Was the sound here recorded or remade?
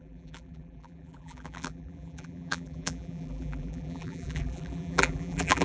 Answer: remade